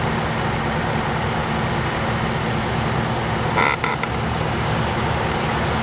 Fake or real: real